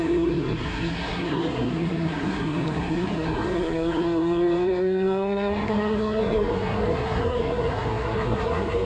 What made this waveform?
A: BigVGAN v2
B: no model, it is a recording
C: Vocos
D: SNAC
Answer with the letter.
D